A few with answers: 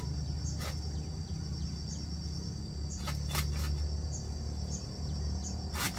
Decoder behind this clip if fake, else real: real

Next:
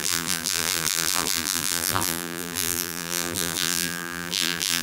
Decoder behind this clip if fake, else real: fake, vocoder, BigVGAN v2